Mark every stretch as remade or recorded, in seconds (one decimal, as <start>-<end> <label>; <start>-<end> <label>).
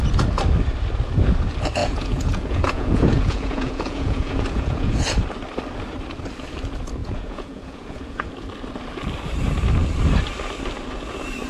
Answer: 0.0-1.8 recorded; 1.8-5.0 remade; 5.0-7.0 recorded; 7.0-8.3 remade; 8.3-11.5 recorded